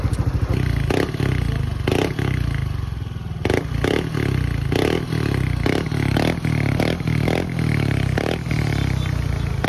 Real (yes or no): yes